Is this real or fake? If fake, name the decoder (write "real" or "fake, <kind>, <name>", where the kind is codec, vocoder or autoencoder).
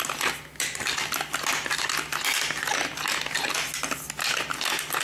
real